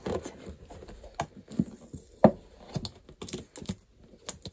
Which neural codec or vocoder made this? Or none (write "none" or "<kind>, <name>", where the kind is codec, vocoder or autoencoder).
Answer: none